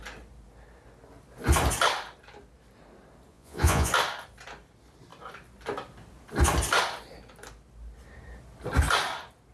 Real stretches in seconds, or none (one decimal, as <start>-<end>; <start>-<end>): 0.0-3.3; 3.9-9.5